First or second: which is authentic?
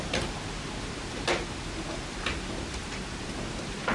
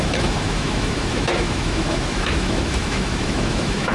first